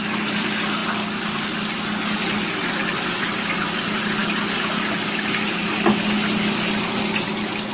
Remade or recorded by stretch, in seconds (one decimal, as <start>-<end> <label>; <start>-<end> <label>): 0.0-7.7 recorded